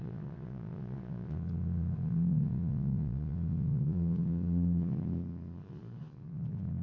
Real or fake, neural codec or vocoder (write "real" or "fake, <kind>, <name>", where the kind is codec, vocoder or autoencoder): fake, vocoder, Vocos